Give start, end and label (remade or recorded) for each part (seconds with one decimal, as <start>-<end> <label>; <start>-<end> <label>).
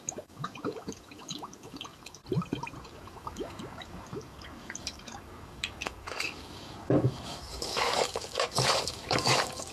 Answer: 0.0-2.2 remade; 2.2-2.8 recorded; 2.8-9.7 remade